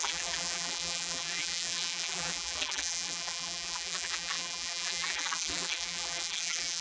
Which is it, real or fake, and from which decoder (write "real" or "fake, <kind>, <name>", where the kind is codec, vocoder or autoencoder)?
fake, vocoder, BigVGAN v2